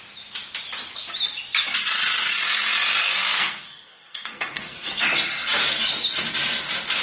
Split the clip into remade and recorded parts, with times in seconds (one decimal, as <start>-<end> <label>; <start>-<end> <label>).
0.0-3.0 recorded; 3.0-5.0 remade; 5.0-7.0 recorded